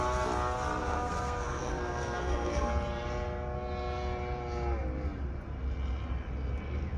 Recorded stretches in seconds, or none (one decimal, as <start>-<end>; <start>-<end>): 0.0-0.8; 2.7-7.0